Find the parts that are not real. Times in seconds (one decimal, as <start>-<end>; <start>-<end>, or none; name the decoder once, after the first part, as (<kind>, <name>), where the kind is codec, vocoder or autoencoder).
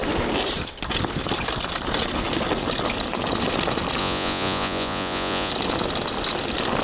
4.0-5.5 (vocoder, Vocos)